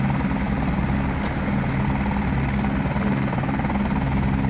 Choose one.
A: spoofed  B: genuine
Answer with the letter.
B